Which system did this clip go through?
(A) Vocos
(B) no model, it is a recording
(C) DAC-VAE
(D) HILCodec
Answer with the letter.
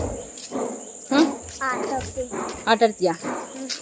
B